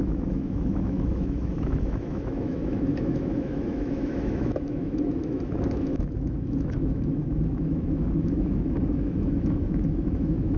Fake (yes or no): yes